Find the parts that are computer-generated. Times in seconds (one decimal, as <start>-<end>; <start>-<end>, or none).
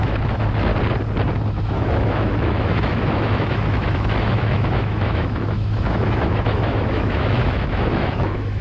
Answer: 0.0-0.7; 1.5-8.6